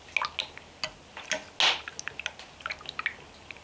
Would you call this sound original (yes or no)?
yes